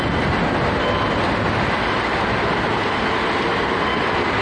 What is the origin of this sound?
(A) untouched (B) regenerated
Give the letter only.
A